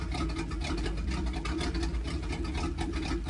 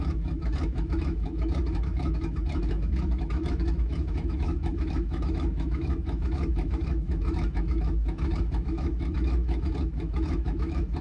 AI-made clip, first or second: second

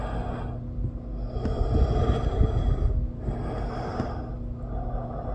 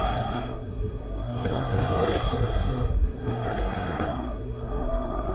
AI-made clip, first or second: second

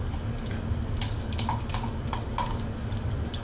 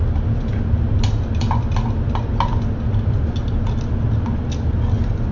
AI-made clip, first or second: first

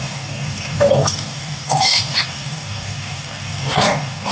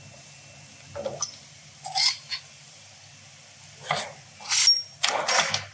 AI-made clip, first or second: first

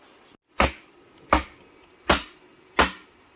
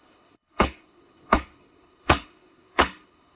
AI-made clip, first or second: second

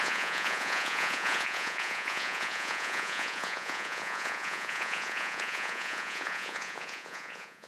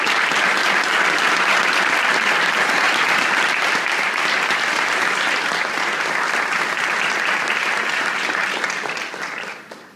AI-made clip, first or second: first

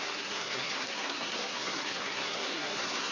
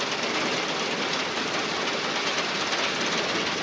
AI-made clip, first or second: first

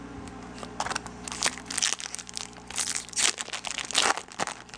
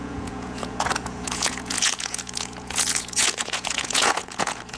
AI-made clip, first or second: second